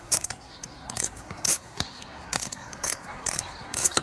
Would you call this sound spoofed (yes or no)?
yes